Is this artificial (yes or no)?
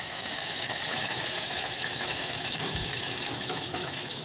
yes